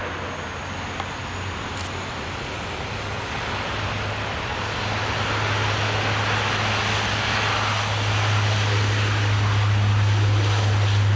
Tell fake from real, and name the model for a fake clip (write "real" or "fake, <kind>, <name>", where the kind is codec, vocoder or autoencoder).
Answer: real